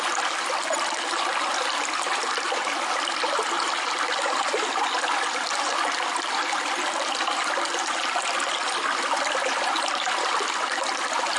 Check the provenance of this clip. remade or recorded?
recorded